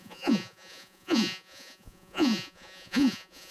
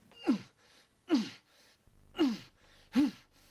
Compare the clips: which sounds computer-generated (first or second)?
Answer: first